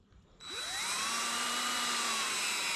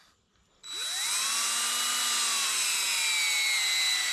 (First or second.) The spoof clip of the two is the first